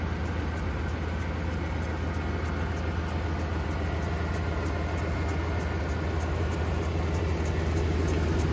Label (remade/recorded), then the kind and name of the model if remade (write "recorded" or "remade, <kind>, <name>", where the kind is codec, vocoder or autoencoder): recorded